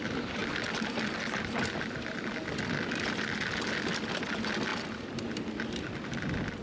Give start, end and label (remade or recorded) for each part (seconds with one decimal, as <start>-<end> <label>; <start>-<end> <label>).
0.0-6.6 recorded